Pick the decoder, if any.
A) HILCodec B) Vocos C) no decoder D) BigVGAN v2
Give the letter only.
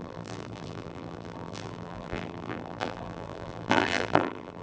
D